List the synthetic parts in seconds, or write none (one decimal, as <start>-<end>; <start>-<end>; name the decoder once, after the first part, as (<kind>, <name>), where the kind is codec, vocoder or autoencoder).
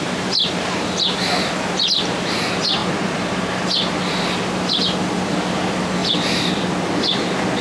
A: none